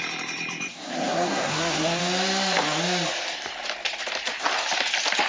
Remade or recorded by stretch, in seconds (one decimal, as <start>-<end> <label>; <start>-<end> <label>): 0.0-0.7 recorded; 0.7-2.0 remade; 2.0-5.3 recorded